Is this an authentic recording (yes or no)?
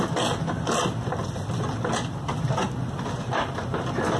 yes